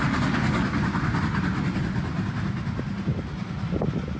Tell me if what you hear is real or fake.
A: real